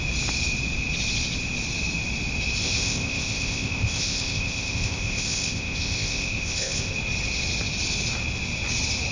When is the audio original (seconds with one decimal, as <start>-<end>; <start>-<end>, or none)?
0.0-2.6; 6.9-9.1